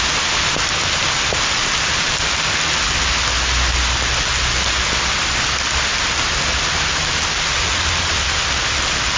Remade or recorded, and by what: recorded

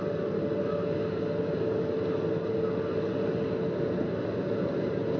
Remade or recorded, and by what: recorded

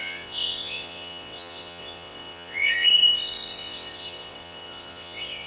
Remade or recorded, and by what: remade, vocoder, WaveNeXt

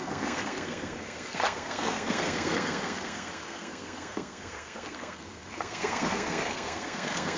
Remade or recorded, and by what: remade, codec, SNAC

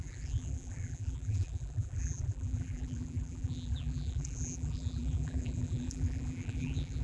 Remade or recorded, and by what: remade, vocoder, BigVGAN v2